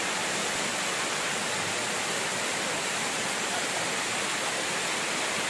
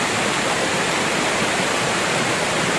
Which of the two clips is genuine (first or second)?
first